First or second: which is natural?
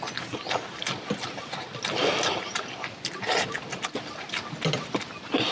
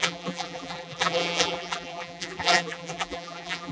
first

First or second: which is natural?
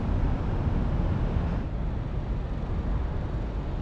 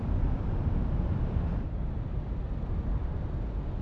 first